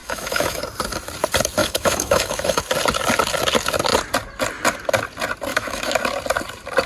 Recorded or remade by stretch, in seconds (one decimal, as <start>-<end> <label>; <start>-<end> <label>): 0.0-0.6 remade; 0.6-1.6 recorded; 1.6-2.6 remade; 2.6-5.5 recorded; 5.5-6.0 remade; 6.0-6.9 recorded